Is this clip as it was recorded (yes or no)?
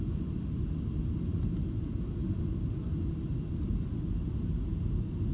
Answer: yes